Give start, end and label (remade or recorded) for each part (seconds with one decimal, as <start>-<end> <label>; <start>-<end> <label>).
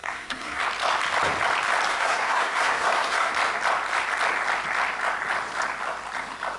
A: 0.0-0.6 remade; 0.6-1.9 recorded; 1.9-3.3 remade; 3.3-6.6 recorded